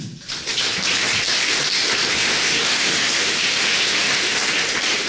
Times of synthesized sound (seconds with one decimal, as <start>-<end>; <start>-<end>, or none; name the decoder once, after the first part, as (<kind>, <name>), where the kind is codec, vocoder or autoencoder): 2.1-4.4 (autoencoder, DAC-VAE)